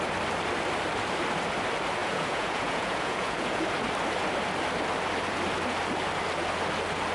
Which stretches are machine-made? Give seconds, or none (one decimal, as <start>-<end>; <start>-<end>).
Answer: 2.0-3.6